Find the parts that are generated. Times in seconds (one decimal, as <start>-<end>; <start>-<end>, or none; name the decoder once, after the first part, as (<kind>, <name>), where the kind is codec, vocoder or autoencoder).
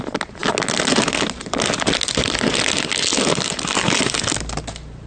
none